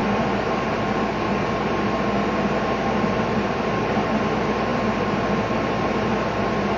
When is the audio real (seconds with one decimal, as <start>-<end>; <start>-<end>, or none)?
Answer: 0.0-4.7; 5.9-6.8